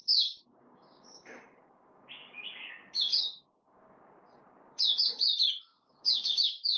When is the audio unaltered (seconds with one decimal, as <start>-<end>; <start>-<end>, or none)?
2.7-3.1; 4.0-5.7